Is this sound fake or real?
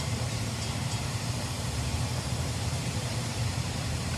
fake